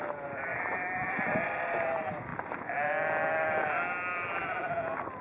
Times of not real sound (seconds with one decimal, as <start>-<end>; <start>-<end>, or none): none